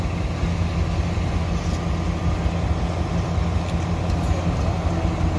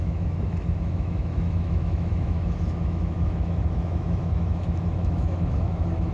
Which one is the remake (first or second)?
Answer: second